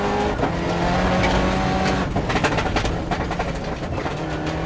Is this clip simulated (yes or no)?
no